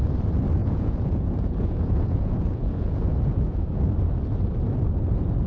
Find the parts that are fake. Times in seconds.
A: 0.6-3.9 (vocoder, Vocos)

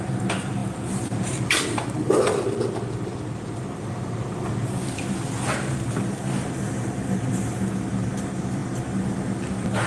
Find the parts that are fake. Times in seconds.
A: none

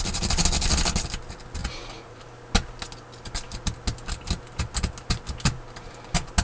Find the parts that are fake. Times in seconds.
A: 1.6-2.2 (vocoder, Vocos)

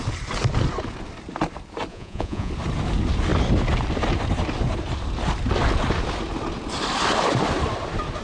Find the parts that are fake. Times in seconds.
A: 1.9-2.5 (vocoder, Vocos)

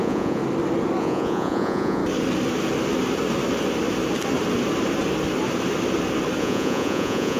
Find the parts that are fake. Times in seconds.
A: 0.0-0.4 (vocoder, Vocos); 1.0-2.0; 6.4-7.4

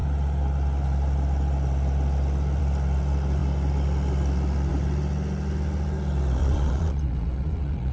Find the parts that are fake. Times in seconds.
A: 6.4-7.9 (vocoder, Vocos)